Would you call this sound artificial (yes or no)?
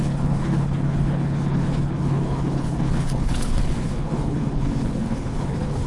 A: yes